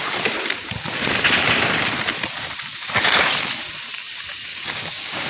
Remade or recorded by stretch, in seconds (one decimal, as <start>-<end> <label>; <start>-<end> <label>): 0.0-4.5 recorded; 4.5-5.3 remade